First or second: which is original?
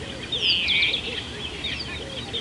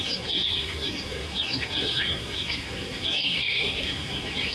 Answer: first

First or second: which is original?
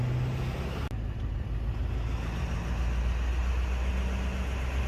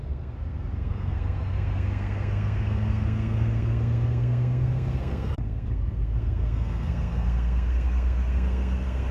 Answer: first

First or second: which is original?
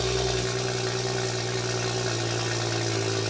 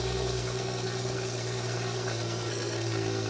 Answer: first